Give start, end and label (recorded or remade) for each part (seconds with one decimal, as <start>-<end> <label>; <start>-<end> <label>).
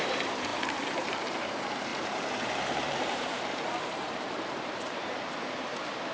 0.0-6.1 remade